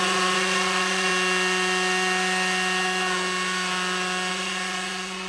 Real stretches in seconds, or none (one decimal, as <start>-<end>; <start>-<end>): 1.1-4.3